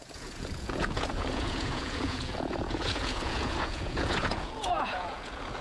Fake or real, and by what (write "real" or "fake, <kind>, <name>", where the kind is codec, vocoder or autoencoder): fake, vocoder, Vocos